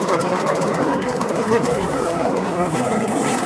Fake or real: fake